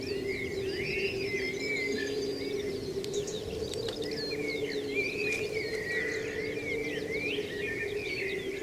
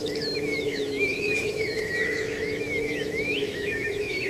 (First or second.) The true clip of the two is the first